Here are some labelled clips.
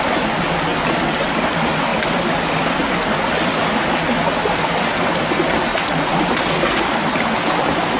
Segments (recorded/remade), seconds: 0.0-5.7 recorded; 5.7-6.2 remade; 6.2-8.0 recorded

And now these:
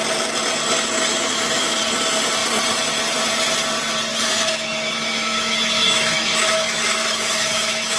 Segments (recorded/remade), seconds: 0.0-1.1 recorded; 1.1-1.8 remade; 1.8-4.1 recorded; 4.1-8.0 remade

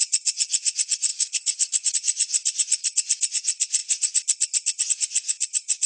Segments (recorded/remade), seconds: 0.0-1.1 recorded; 1.1-1.9 remade; 1.9-5.9 recorded

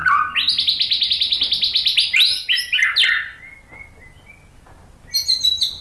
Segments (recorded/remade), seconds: 0.0-5.8 recorded

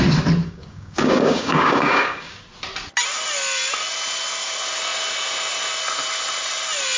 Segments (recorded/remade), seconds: 0.0-0.4 recorded; 0.4-2.4 remade; 2.4-7.0 recorded